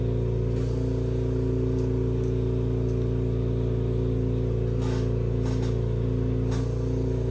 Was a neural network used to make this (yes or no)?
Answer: no